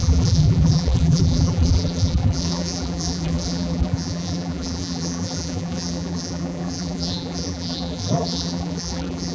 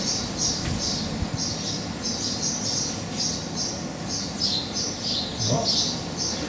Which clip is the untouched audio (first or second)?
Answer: second